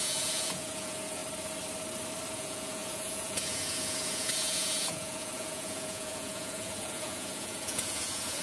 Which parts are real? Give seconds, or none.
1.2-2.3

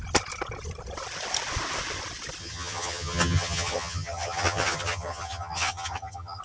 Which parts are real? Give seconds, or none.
0.0-2.4

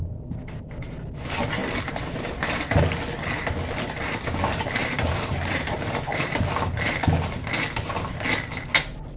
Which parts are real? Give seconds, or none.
0.0-1.6; 2.8-4.8; 6.5-9.2

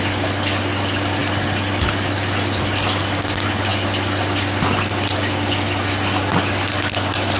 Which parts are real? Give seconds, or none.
0.0-7.4

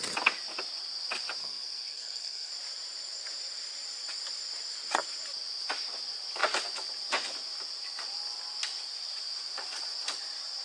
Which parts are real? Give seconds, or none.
0.0-1.4; 2.5-10.6